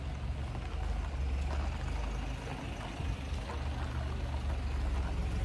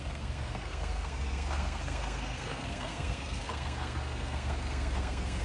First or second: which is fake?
second